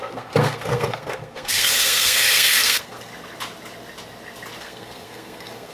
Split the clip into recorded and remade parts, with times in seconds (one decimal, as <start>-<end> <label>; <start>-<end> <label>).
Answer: 0.0-3.1 remade; 3.1-4.6 recorded; 4.6-5.7 remade